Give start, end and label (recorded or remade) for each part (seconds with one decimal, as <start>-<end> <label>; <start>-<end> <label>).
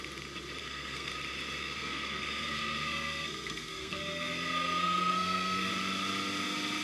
0.0-0.6 recorded; 0.6-1.1 remade; 1.1-1.6 recorded; 1.6-5.7 remade; 5.7-6.8 recorded